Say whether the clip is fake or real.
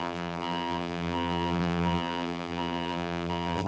fake